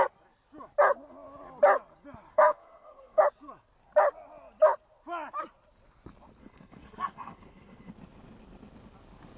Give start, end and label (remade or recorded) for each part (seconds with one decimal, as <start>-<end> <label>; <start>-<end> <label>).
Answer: 0.0-2.3 recorded; 2.3-3.2 remade; 3.2-6.4 recorded; 6.4-7.9 remade; 7.9-9.4 recorded

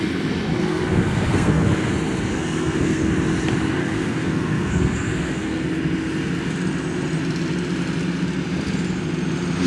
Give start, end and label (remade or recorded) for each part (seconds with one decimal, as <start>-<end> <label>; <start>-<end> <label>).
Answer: 0.0-0.6 recorded; 0.6-1.9 remade; 1.9-2.3 recorded; 2.3-3.1 remade; 3.1-3.8 recorded; 3.8-5.7 remade; 5.7-9.7 recorded

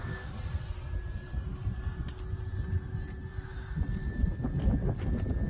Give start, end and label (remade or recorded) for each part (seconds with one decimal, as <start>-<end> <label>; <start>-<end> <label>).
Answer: 0.0-5.5 recorded

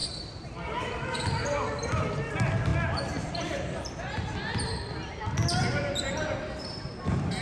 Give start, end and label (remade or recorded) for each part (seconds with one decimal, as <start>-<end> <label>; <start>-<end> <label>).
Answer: 0.0-0.9 remade; 0.9-7.4 recorded

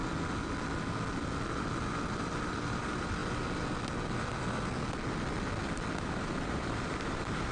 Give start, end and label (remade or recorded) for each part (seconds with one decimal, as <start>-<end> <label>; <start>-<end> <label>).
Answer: 0.0-2.5 recorded; 2.5-3.2 remade; 3.2-6.0 recorded; 6.0-7.5 remade